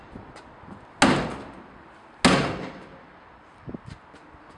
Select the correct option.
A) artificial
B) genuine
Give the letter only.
B